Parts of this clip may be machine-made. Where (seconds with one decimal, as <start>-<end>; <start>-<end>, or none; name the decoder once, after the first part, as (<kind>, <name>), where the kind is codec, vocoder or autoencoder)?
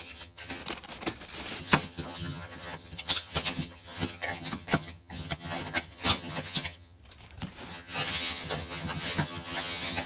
0.0-0.6 (vocoder, HiFi-GAN); 1.6-7.0; 7.7-10.1